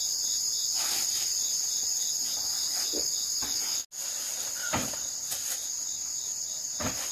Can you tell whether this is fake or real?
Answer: real